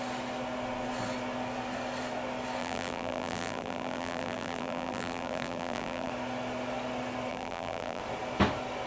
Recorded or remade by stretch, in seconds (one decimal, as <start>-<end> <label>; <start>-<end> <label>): 0.0-2.6 recorded; 2.6-6.1 remade; 6.1-7.3 recorded; 7.3-8.0 remade; 8.0-8.9 recorded

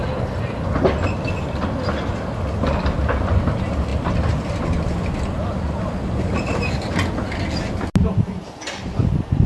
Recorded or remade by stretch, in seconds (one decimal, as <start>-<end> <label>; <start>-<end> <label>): 0.0-9.5 recorded

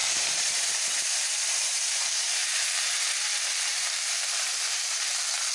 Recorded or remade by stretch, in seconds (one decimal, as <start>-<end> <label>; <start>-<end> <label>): 0.0-2.8 remade; 2.8-3.7 recorded; 3.7-5.1 remade; 5.1-5.5 recorded

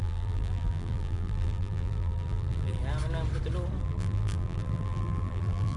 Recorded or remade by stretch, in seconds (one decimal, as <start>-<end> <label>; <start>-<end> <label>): 0.0-2.8 remade; 2.8-3.8 recorded; 3.8-5.8 remade